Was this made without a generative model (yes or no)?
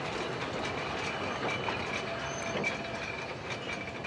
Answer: yes